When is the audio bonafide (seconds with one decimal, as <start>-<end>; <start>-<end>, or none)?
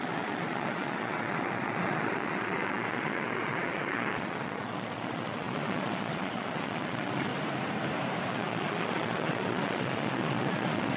7.3-8.3